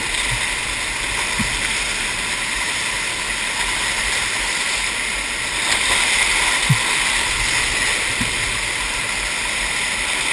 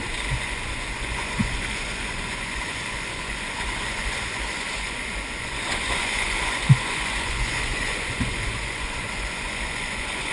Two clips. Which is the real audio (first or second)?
first